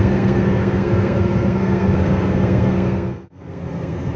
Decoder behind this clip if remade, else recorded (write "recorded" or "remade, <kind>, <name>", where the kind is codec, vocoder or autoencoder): remade, codec, SNAC